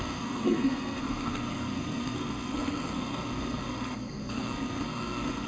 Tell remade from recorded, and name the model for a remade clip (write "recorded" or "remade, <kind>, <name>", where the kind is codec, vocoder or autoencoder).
remade, codec, SNAC